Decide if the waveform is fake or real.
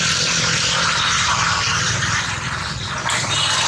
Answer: real